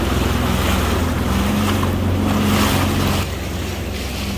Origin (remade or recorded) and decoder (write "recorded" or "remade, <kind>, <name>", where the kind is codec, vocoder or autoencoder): recorded